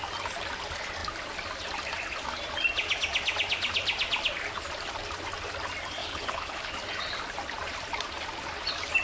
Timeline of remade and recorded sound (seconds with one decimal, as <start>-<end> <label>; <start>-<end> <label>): 0.0-6.0 recorded; 6.0-6.7 remade; 6.7-9.0 recorded